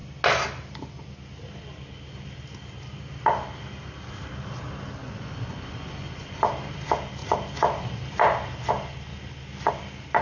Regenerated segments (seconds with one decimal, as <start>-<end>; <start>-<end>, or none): 5.0-6.4